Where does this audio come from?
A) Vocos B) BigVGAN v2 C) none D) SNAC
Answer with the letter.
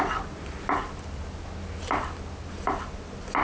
C